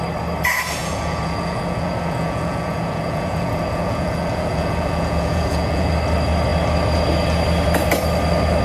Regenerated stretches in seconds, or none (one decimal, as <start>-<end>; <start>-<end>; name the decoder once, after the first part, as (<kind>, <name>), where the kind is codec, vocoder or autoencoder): 0.8-5.9 (vocoder, Vocos)